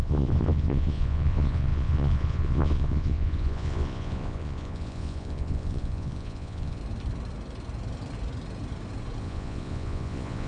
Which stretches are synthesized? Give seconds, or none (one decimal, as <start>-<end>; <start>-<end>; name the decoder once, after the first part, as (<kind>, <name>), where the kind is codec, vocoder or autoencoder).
0.0-6.8 (vocoder, Vocos); 9.2-10.5